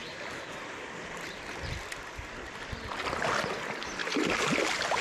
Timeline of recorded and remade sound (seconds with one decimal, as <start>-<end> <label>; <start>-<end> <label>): 0.0-5.0 recorded